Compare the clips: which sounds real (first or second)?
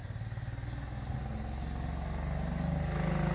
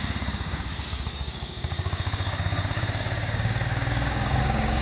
first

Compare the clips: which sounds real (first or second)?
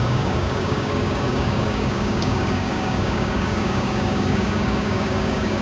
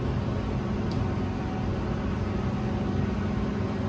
second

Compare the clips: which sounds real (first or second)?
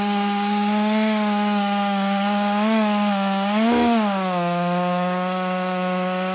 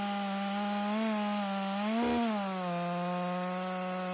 second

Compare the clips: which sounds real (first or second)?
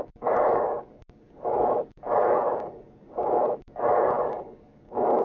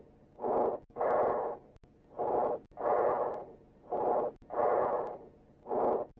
second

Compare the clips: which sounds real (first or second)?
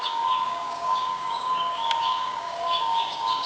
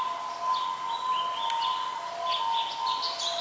second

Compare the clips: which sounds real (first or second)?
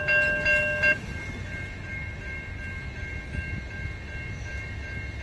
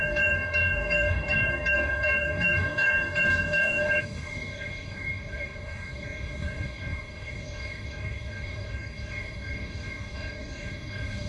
first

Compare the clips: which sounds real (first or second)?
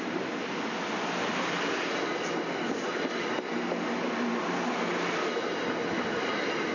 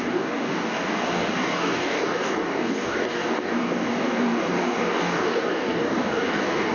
first